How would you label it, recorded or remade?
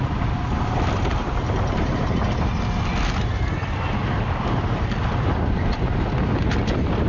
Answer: recorded